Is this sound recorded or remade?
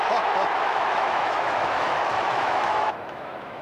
remade